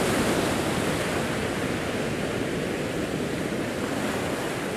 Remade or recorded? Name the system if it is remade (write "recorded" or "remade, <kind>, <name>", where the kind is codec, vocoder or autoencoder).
recorded